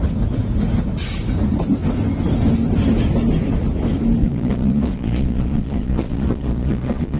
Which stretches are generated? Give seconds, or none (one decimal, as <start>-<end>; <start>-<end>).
4.2-7.2